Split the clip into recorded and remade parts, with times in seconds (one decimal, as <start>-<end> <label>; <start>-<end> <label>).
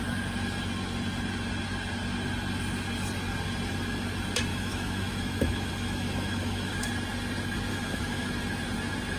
0.0-4.5 recorded; 4.5-6.9 remade; 6.9-7.7 recorded; 7.7-8.3 remade; 8.3-9.2 recorded